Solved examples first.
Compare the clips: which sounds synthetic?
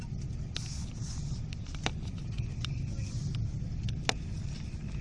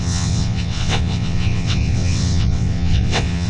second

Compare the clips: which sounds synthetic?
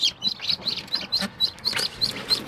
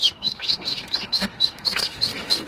second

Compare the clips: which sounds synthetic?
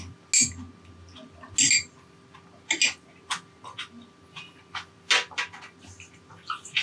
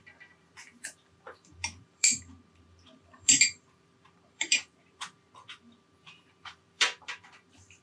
second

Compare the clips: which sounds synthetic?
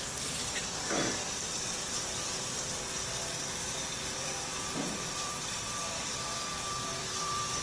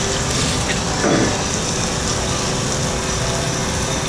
first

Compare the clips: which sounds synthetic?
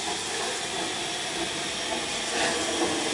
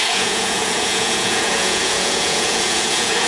second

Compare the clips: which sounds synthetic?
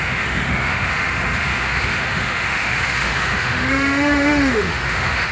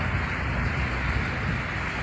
first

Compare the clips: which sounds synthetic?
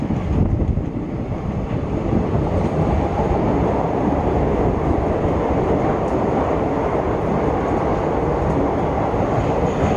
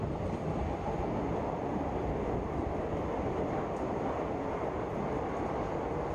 first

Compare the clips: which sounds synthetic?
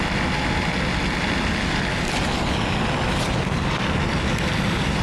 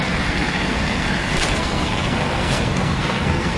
second